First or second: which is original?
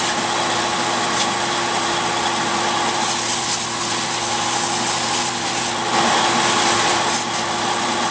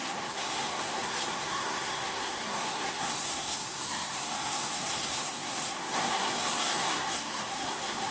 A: first